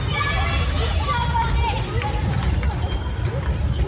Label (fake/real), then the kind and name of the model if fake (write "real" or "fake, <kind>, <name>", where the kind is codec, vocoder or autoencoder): real